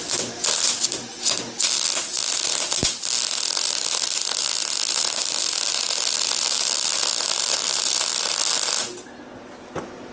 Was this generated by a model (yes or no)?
no